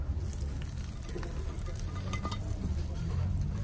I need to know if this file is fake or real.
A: real